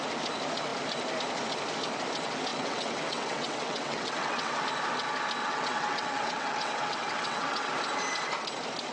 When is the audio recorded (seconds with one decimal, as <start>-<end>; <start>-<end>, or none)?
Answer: 0.0-2.5; 4.6-5.4; 7.7-8.9